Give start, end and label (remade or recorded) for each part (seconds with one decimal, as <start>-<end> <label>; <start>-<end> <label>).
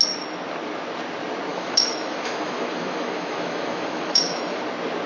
0.0-1.5 recorded; 1.5-4.6 remade; 4.6-5.1 recorded